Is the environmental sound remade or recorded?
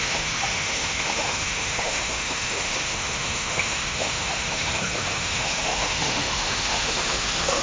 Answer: remade